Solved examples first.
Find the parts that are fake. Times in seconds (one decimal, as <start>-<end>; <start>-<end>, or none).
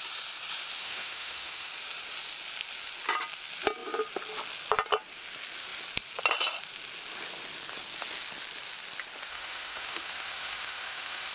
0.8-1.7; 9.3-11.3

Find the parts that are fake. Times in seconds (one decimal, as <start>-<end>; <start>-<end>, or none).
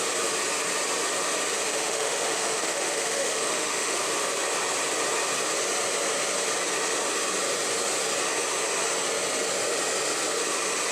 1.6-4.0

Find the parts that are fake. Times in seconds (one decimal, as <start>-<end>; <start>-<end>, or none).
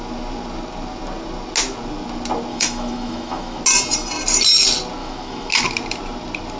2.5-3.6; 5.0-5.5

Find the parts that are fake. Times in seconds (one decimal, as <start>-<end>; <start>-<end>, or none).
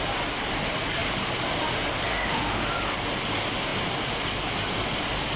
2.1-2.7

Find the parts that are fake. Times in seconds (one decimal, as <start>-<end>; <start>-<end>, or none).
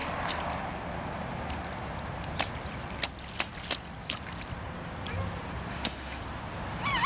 5.7-6.2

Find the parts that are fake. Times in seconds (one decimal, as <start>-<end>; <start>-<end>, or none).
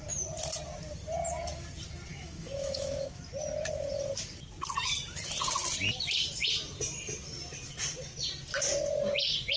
2.1-3.2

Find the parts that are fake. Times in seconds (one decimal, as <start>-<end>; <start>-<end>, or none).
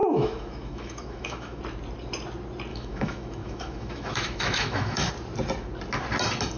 0.0-1.6; 2.7-5.1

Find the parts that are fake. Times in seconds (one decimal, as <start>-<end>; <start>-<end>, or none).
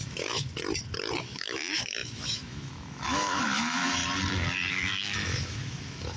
0.0-0.5; 1.2-4.0; 4.7-6.2